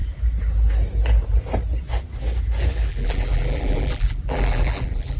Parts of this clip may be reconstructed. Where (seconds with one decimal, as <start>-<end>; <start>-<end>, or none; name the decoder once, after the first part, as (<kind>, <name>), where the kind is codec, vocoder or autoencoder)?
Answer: 2.9-5.2 (vocoder, BigVGAN v2)

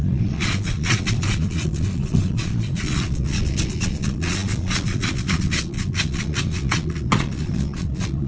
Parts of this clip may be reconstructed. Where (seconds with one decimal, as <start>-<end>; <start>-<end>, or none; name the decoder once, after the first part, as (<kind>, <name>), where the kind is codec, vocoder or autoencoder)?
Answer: 0.0-8.3 (vocoder, Vocos)

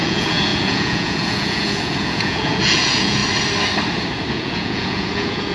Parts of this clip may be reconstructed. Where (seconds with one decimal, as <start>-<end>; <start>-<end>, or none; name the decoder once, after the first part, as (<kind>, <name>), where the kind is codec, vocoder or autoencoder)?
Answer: 0.0-3.2 (vocoder, Vocos); 4.3-5.5

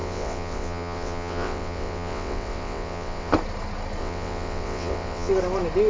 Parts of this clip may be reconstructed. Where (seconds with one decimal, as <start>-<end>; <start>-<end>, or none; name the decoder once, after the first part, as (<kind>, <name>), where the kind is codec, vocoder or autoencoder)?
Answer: 0.0-3.3 (vocoder, WaveNeXt); 4.0-5.3

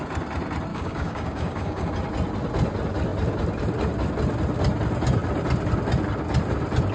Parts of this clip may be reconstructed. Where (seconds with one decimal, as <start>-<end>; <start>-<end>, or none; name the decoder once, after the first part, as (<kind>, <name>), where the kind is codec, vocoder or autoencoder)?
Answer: 0.7-1.9 (codec, DAC)

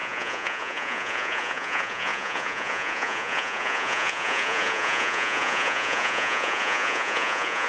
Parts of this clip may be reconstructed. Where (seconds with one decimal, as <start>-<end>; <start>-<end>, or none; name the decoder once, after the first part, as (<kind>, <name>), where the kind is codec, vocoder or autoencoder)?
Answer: 0.0-7.7 (vocoder, Vocos)

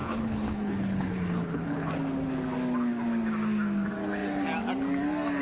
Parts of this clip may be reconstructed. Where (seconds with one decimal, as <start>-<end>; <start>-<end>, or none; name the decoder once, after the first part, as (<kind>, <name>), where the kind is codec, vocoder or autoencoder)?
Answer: 0.0-1.9 (codec, HILCodec)

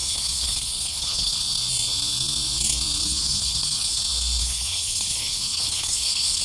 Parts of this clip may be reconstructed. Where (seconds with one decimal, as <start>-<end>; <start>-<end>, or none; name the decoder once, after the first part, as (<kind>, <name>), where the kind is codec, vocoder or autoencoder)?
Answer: 0.0-1.4 (codec, HILCodec); 3.0-4.0; 4.4-6.4